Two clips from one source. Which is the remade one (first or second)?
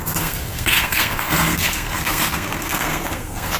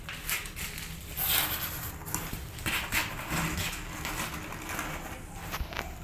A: first